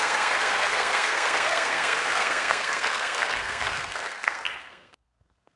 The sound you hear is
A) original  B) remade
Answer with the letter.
B